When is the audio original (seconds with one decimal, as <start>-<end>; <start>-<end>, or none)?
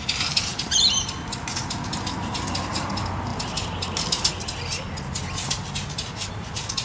0.0-6.8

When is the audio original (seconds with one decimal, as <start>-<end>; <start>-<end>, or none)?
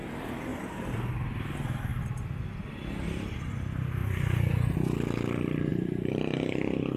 0.0-0.5; 1.1-4.0; 4.5-5.7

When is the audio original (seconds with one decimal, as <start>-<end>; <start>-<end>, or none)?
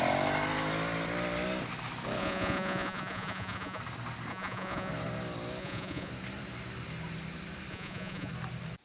0.0-2.2; 3.8-4.3; 4.9-5.6; 6.1-7.7; 8.3-8.8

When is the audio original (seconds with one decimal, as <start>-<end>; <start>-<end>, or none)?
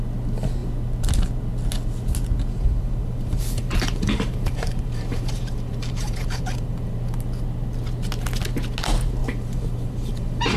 0.0-2.4; 6.9-9.2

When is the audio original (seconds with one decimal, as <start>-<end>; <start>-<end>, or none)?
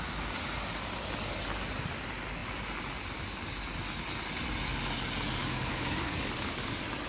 0.0-5.4; 6.6-7.1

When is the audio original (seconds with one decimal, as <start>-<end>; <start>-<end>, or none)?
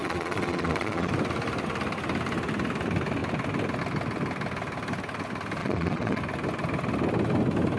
1.1-5.6; 6.2-7.8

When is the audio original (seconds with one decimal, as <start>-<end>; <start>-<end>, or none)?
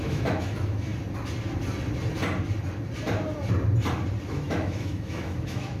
0.9-4.3